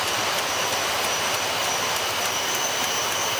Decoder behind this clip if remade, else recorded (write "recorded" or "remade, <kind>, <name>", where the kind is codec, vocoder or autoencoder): recorded